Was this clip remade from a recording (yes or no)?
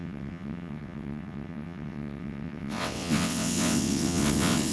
yes